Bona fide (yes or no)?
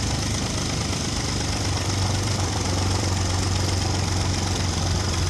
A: no